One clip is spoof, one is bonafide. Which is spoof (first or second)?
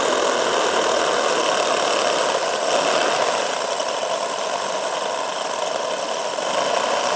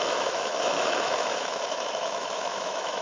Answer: second